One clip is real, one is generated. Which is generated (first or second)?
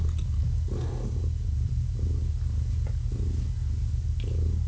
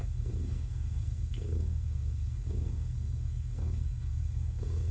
second